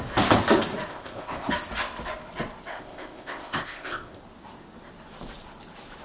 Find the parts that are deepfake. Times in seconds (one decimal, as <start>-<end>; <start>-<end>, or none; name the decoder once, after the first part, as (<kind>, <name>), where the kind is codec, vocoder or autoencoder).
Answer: 0.9-1.5 (codec, ZipCodec); 2.7-4.2